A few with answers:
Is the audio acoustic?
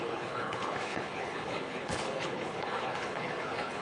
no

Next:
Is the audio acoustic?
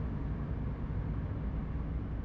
yes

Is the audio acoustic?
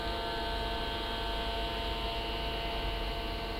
yes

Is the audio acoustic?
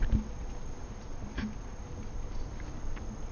yes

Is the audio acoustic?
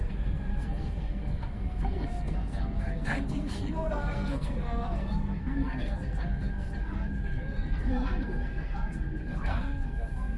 no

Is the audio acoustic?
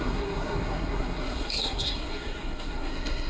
no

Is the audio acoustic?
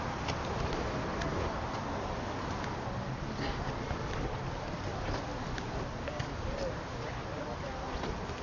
yes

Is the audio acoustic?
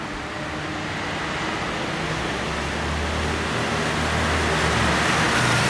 yes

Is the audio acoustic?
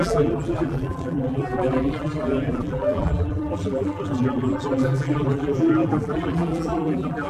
no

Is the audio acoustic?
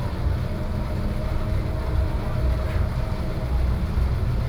yes